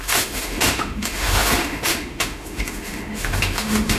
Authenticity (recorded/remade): remade